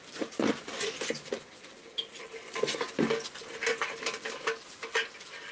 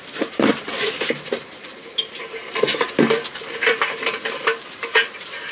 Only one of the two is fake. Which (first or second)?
second